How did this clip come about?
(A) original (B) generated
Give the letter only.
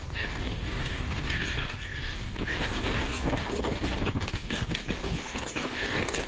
B